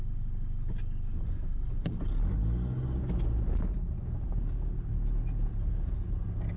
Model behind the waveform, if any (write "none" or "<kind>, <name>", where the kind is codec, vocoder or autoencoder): none